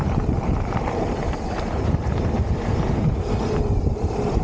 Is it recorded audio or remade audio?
remade